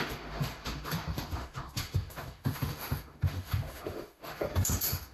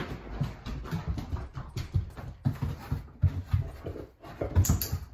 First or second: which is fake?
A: first